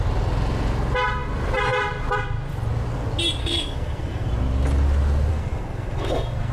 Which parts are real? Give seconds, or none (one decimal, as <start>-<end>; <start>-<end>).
0.0-3.4; 4.3-5.3